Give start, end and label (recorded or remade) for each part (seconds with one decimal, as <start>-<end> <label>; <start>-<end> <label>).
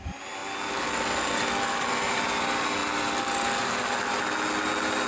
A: 0.0-5.1 recorded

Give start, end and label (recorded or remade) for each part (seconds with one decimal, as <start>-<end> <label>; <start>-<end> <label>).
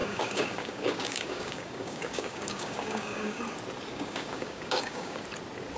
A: 0.0-3.4 remade; 3.4-3.9 recorded; 3.9-5.2 remade; 5.2-5.8 recorded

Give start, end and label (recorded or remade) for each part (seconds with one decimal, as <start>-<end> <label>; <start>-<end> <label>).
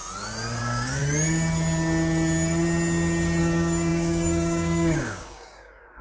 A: 0.0-0.6 recorded; 0.6-1.0 remade; 1.0-3.4 recorded; 3.4-6.0 remade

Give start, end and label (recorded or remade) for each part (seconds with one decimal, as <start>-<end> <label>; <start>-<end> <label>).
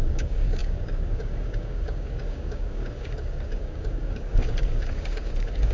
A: 0.0-5.7 remade